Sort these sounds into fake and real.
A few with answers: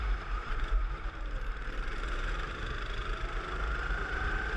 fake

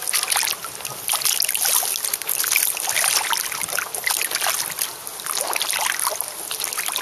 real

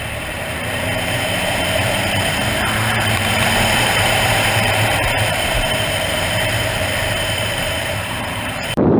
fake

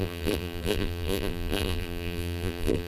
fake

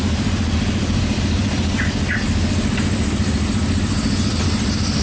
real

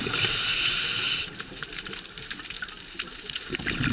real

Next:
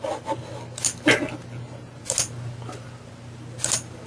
real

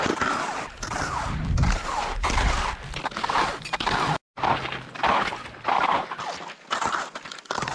real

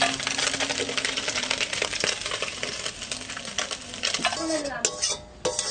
real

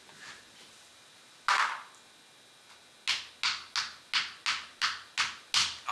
real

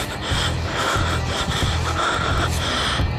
real